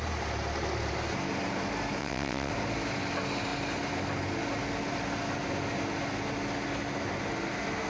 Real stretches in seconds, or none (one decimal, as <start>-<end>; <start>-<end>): 0.0-2.0; 2.5-7.9